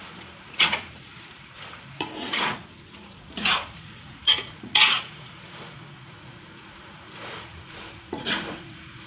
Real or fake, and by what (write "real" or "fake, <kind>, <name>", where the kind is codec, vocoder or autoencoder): fake, vocoder, Vocos